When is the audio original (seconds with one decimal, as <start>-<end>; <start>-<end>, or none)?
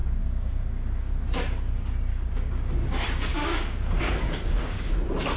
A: 1.1-2.1; 2.7-3.3; 4.9-5.4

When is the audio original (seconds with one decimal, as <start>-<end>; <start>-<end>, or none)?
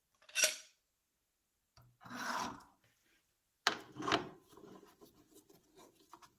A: 0.0-6.4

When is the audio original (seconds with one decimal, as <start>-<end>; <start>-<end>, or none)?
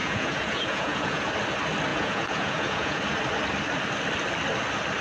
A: 1.3-1.9; 3.0-5.0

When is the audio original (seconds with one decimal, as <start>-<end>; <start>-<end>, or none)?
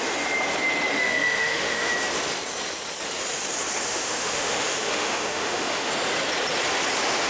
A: 0.0-0.9; 1.9-3.9; 5.9-7.3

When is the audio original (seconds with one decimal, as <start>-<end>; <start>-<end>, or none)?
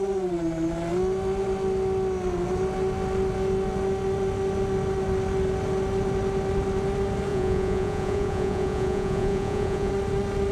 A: 0.0-7.3; 9.9-10.5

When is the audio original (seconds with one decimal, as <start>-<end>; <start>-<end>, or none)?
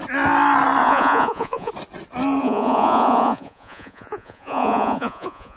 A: 0.0-0.8; 1.7-2.4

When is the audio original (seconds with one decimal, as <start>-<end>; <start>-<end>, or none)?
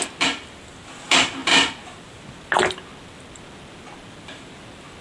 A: 0.0-5.0